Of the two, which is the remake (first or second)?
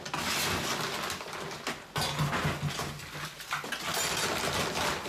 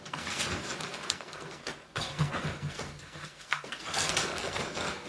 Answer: second